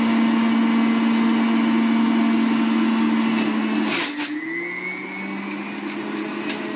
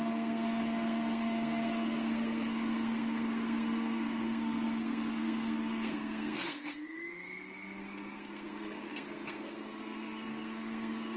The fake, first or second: second